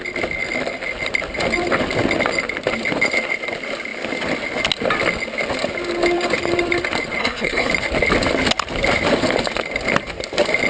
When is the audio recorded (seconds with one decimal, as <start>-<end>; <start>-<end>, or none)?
0.0-7.2; 7.7-10.7